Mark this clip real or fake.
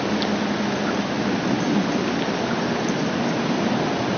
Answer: real